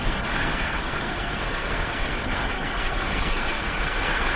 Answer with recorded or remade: remade